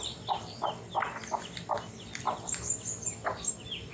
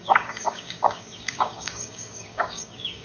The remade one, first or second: second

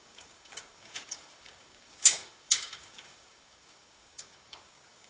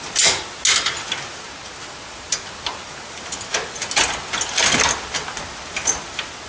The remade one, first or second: first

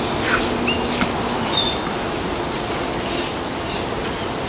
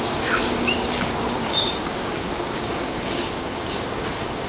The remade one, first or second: second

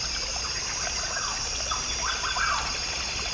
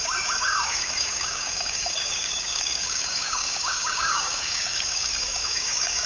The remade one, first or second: second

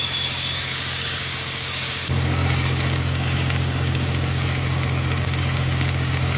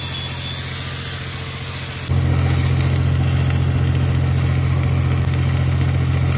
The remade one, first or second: first